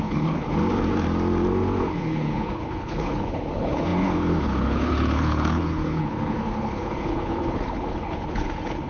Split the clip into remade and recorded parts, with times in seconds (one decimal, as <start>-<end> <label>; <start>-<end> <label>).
0.0-0.6 remade; 0.6-1.8 recorded; 1.8-8.9 remade